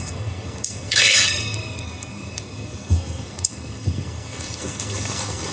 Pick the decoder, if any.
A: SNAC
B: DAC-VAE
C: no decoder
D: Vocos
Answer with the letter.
A